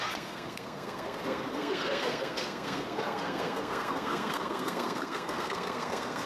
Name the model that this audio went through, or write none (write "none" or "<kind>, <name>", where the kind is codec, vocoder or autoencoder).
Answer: codec, SNAC